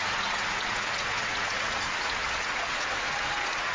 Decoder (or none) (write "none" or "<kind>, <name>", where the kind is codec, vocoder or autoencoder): vocoder, Vocos